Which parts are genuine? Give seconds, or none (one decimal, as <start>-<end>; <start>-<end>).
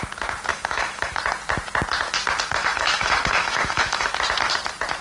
0.0-0.5; 1.2-2.6; 4.1-5.0